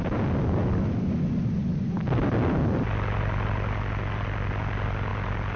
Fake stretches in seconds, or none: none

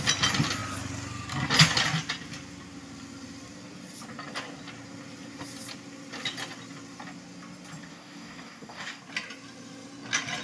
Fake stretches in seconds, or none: 7.9-9.0 (codec, DAC)

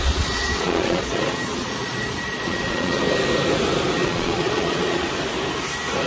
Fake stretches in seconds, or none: 0.0-3.0 (vocoder, Vocos); 4.0-5.1